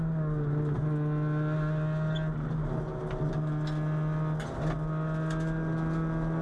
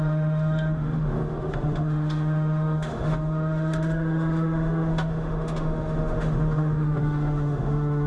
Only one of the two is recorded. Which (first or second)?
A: first